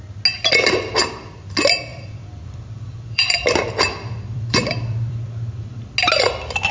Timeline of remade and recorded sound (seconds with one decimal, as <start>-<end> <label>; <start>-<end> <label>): 0.0-1.9 recorded; 1.9-5.9 remade; 5.9-6.7 recorded